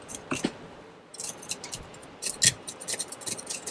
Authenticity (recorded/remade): recorded